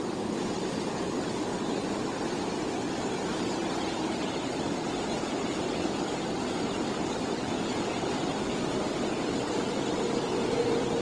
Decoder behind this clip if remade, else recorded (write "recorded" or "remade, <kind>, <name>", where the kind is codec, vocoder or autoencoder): recorded